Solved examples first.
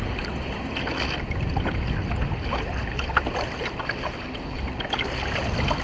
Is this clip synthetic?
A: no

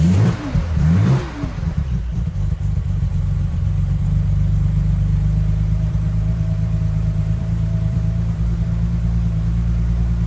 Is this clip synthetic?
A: yes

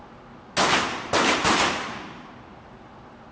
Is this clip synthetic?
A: no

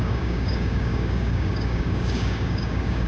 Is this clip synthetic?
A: yes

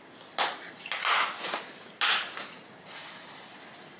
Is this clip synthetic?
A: no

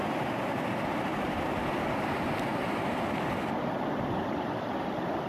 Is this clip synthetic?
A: no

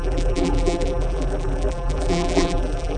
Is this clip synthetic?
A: yes